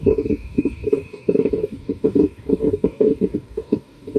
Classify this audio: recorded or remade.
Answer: remade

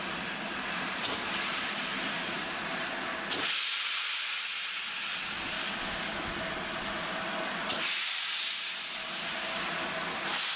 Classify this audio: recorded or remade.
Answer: recorded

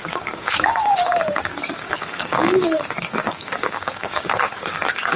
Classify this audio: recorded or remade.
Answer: remade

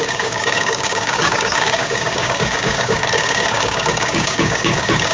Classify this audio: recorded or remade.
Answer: remade